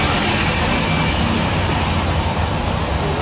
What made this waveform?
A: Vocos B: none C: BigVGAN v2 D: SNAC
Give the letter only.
B